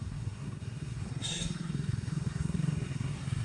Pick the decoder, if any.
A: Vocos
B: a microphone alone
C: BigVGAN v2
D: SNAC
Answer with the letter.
D